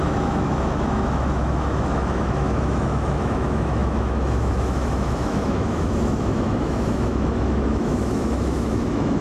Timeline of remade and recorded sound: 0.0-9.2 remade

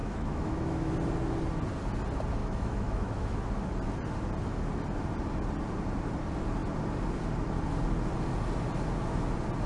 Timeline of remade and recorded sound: 0.0-0.9 remade; 0.9-2.4 recorded; 2.4-3.4 remade; 3.4-9.7 recorded

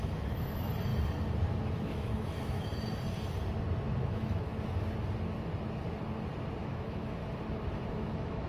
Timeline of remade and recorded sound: 0.0-0.9 remade; 0.9-1.7 recorded; 1.7-2.7 remade; 2.7-4.0 recorded; 4.0-4.5 remade; 4.5-6.6 recorded; 6.6-7.2 remade; 7.2-7.9 recorded; 7.9-8.5 remade

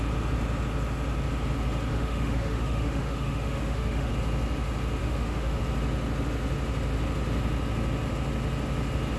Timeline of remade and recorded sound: 0.0-1.9 recorded; 1.9-4.1 remade; 4.1-5.0 recorded; 5.0-5.6 remade; 5.6-9.2 recorded

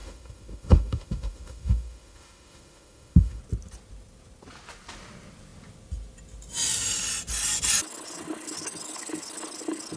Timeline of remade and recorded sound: 0.0-3.4 remade; 3.4-10.0 recorded